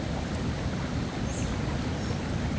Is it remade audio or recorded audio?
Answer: remade